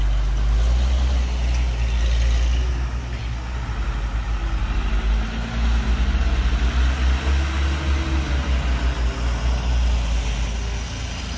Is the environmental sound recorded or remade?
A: recorded